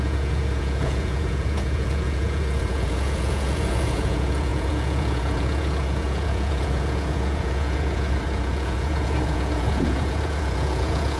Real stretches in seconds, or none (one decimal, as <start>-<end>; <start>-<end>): none